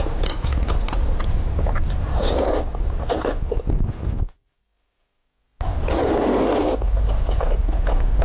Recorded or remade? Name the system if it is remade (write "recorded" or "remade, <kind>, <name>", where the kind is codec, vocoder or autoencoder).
recorded